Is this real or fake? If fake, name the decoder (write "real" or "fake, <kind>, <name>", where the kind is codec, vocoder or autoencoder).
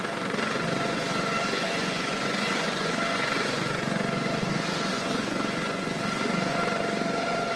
fake, vocoder, Vocos